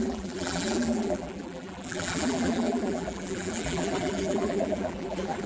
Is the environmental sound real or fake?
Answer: fake